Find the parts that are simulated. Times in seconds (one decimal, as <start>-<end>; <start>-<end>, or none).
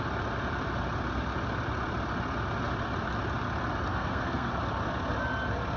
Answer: 3.9-4.5